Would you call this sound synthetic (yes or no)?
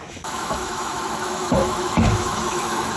yes